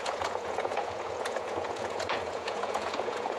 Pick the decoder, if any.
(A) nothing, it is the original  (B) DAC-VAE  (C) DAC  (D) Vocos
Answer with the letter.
D